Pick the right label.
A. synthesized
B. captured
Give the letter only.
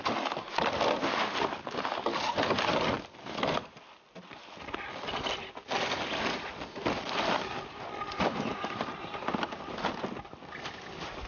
B